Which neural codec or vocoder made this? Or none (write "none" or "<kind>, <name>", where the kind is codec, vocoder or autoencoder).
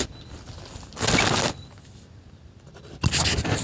none